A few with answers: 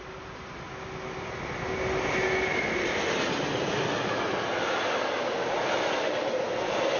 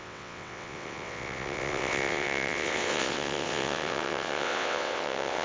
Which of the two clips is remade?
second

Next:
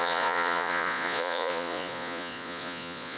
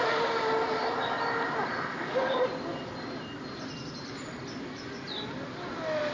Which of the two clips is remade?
first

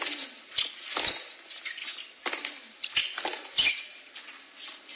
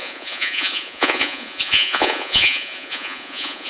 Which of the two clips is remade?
second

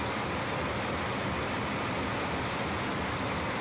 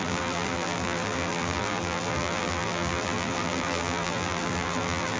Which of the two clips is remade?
second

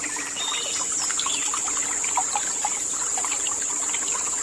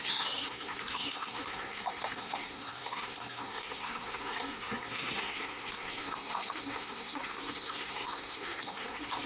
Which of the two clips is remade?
second